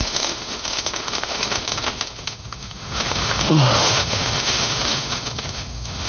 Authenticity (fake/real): fake